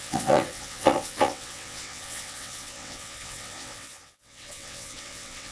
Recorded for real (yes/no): no